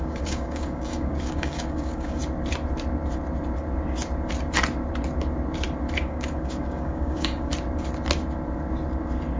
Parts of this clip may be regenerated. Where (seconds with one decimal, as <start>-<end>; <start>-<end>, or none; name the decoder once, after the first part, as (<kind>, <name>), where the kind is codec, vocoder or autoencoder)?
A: 0.0-2.2 (codec, DAC); 6.0-7.5